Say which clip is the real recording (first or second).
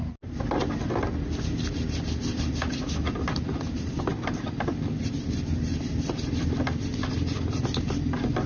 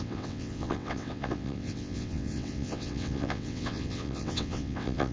first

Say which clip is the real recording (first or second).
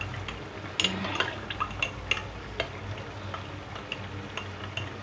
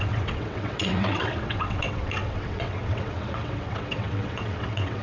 first